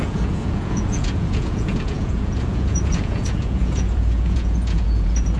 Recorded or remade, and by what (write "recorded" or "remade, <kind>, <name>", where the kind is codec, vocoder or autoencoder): remade, vocoder, Vocos